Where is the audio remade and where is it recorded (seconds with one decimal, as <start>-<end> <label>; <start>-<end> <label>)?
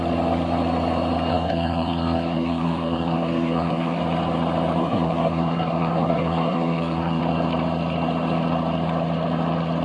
0.0-1.3 recorded; 1.3-4.0 remade; 4.0-4.8 recorded; 4.8-7.2 remade; 7.2-9.8 recorded